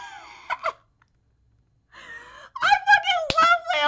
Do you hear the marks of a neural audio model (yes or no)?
no